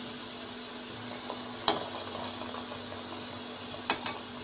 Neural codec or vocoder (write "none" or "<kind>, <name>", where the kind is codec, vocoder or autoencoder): vocoder, BigVGAN v2